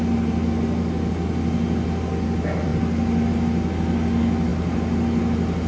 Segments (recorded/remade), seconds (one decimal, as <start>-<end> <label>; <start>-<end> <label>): 0.0-5.7 recorded

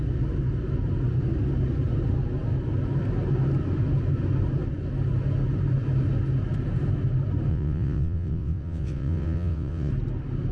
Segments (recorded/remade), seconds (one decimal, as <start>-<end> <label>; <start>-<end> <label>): 0.0-7.5 recorded; 7.5-9.9 remade; 9.9-10.5 recorded